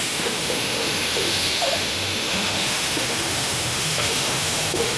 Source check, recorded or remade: remade